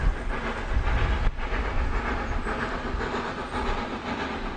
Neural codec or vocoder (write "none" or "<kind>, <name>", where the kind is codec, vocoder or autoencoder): none